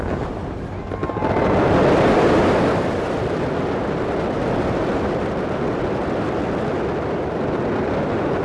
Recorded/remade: remade